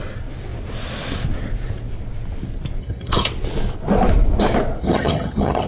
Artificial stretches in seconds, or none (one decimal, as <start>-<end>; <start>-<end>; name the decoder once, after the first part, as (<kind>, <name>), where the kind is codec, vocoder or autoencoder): 2.8-3.3 (vocoder, HiFi-GAN); 4.8-5.7